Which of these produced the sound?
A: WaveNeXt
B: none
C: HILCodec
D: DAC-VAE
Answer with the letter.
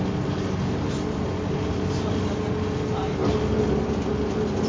B